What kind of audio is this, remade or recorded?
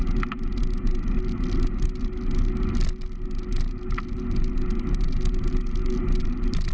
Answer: recorded